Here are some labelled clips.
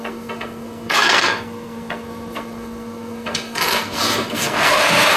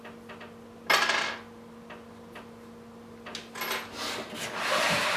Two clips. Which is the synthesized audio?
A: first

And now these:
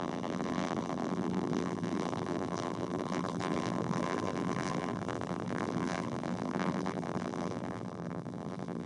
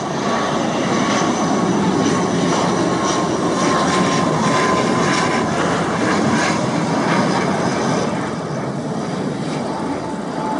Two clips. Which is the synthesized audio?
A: first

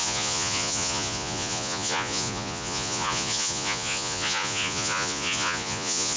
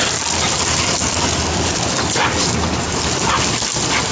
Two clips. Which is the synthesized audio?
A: first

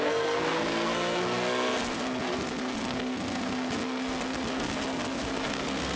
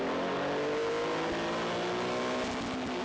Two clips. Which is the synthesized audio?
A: first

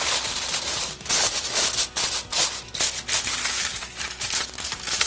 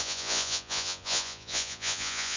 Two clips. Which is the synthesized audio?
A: second